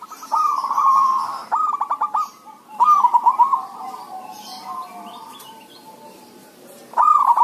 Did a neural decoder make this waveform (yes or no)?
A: yes